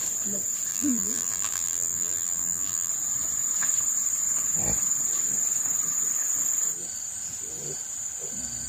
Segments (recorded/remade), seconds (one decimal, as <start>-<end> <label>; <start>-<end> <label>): 0.0-0.7 recorded; 0.7-2.9 remade; 2.9-8.7 recorded